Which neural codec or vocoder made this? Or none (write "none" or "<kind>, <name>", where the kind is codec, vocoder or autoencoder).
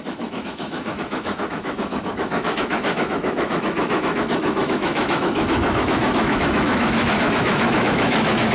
autoencoder, DAC-VAE